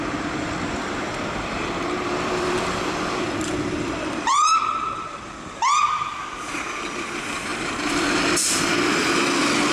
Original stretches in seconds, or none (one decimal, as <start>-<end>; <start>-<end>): none